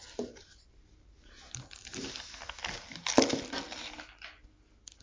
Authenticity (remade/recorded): recorded